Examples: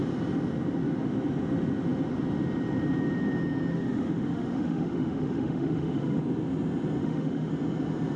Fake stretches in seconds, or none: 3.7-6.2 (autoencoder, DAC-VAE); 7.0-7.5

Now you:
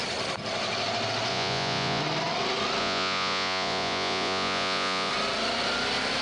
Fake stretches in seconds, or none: 1.3-2.0 (vocoder, Vocos); 2.8-5.1

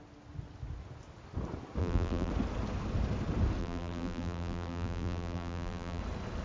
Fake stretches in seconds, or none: 1.8-2.3 (vocoder, BigVGAN v2); 3.6-6.0